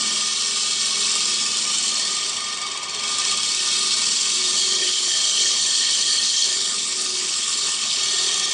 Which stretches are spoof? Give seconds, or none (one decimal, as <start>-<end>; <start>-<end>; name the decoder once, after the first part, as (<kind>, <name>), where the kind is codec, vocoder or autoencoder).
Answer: 4.8-8.0 (codec, HILCodec)